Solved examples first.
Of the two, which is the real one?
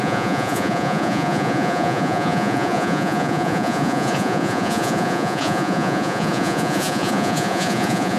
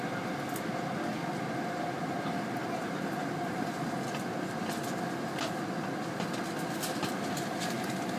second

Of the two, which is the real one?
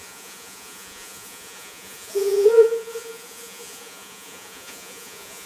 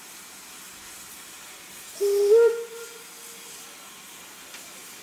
second